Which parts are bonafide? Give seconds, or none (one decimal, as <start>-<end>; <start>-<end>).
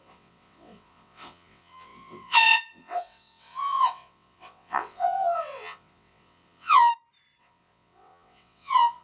6.9-7.4